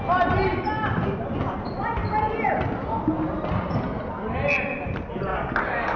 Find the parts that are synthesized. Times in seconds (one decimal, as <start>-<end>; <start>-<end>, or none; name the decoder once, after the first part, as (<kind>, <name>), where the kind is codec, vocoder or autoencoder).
5.3-6.0 (codec, DAC)